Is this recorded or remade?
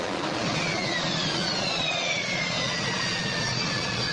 remade